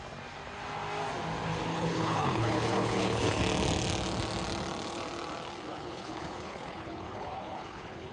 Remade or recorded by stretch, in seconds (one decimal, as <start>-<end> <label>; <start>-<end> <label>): 0.0-1.7 recorded; 1.7-3.4 remade; 3.4-5.7 recorded; 5.7-8.1 remade